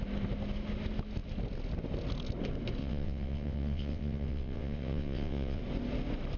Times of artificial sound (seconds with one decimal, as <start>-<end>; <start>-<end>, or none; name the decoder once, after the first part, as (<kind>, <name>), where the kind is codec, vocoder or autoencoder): 2.8-5.6 (vocoder, WaveNeXt)